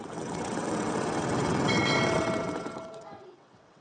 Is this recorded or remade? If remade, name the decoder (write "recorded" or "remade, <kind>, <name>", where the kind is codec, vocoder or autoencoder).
remade, vocoder, WaveNeXt